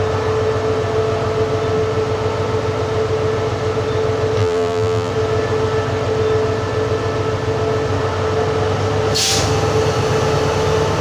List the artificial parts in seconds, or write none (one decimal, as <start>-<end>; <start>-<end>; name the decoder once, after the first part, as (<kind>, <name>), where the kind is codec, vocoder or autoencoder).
4.4-5.1 (vocoder, BigVGAN v2)